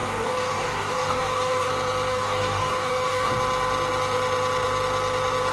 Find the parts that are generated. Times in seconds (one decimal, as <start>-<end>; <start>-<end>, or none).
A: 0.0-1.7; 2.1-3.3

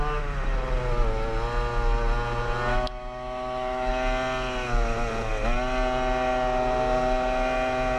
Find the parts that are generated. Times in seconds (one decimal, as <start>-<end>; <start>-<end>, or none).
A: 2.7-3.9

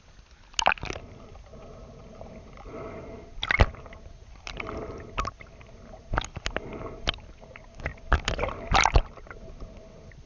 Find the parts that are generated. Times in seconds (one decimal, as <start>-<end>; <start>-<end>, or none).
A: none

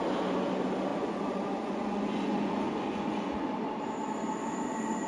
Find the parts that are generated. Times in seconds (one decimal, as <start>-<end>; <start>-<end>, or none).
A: 0.9-3.5

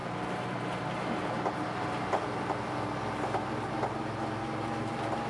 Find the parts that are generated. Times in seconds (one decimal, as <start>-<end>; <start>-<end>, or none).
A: none

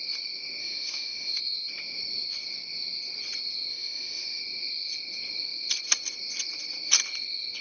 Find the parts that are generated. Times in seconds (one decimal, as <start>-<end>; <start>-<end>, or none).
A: 0.6-1.4; 3.7-4.4

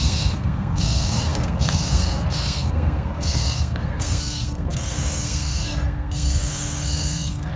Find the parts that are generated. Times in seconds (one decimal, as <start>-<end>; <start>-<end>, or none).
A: 0.0-7.6